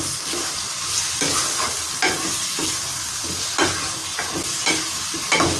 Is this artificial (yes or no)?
no